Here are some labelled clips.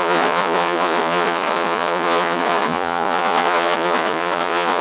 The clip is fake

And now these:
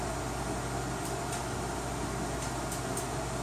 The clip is real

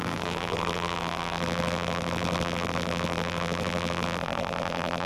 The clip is fake